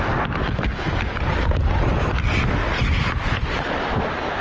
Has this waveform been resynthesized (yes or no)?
no